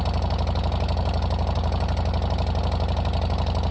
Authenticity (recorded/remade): recorded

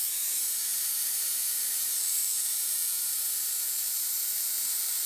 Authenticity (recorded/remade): remade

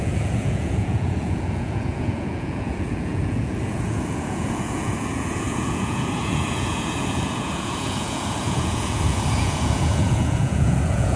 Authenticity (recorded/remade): remade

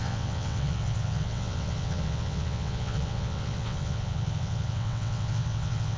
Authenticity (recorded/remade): remade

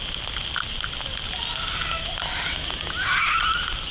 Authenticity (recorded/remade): recorded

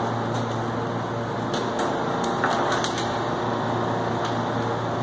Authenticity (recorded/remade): recorded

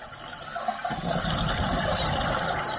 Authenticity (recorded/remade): recorded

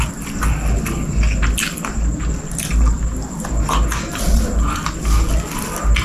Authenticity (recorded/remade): recorded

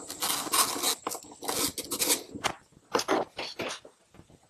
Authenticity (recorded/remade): recorded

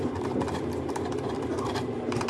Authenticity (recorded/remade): remade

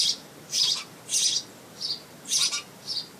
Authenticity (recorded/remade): recorded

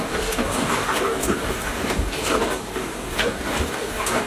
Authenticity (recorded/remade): remade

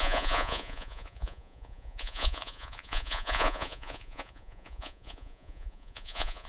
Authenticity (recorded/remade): remade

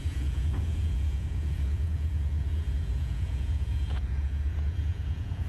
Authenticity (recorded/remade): remade